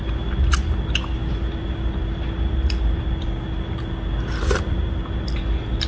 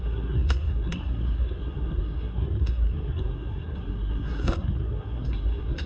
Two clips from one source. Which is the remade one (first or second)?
second